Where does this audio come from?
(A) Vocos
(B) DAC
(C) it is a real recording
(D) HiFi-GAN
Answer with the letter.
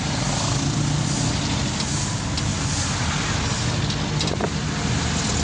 C